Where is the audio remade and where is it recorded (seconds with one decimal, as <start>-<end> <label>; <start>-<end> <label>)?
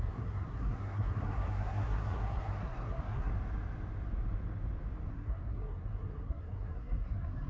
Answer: 0.0-3.3 remade; 3.3-5.1 recorded; 5.1-7.5 remade